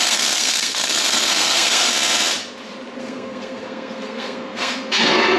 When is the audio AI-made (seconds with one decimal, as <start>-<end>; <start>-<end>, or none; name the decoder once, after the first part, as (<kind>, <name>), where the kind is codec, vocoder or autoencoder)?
0.0-1.9 (codec, SNAC); 3.0-5.4